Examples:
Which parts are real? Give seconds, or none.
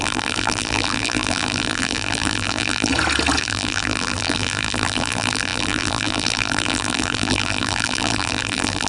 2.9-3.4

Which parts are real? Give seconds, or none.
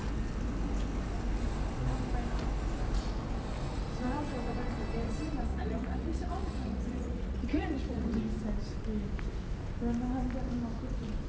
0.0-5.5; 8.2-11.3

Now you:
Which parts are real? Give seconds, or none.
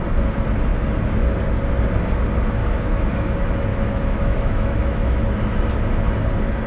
0.0-2.6; 3.3-3.7; 5.6-6.7